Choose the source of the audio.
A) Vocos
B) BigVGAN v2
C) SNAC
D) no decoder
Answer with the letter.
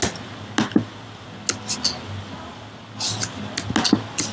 D